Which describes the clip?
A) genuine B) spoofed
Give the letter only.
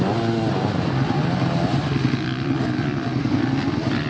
A